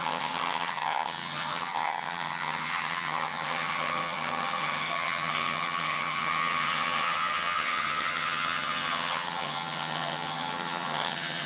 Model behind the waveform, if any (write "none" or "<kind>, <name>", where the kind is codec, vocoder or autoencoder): vocoder, HiFi-GAN